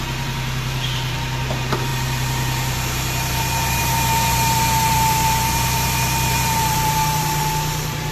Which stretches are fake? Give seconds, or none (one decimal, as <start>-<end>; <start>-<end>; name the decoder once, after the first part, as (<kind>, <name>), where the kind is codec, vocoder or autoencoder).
0.0-8.1 (vocoder, BigVGAN v2)